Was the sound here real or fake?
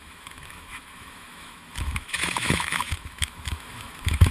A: fake